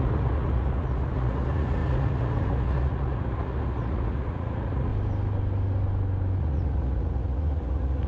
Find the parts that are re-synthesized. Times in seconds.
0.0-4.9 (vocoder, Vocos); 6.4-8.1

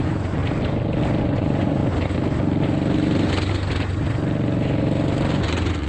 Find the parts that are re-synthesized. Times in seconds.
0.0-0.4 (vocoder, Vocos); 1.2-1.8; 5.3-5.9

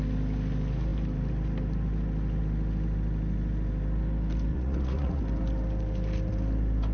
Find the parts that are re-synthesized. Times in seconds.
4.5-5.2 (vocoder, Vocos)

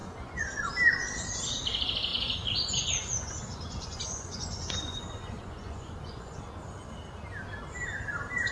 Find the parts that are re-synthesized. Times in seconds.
0.0-0.7 (vocoder, Vocos); 2.1-6.4